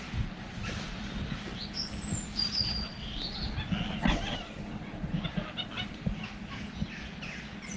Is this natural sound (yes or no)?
yes